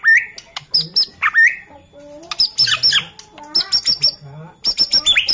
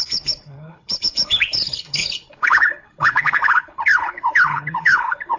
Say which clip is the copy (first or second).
second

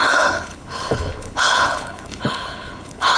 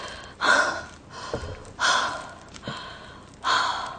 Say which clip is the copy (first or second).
first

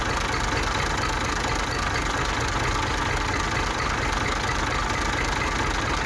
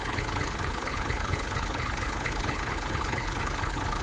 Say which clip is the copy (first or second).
second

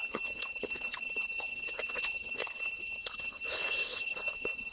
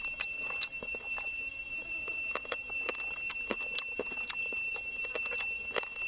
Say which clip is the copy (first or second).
first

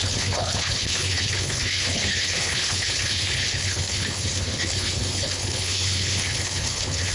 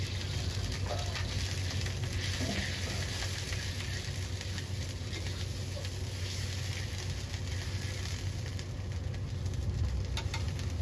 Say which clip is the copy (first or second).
first